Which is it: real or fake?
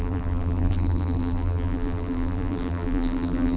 fake